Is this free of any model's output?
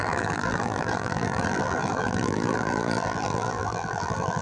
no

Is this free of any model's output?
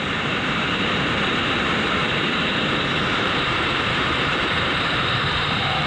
no